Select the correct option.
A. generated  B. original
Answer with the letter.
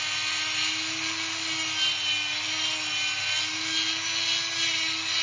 B